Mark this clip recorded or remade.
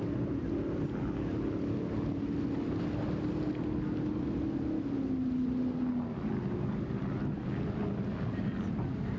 recorded